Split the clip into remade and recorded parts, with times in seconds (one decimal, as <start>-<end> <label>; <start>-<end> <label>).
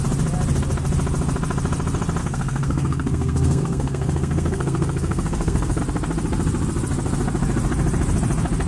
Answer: 0.0-2.2 recorded; 2.2-5.8 remade; 5.8-8.7 recorded